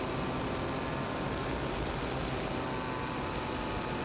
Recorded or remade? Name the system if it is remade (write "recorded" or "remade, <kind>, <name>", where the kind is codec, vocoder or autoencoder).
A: recorded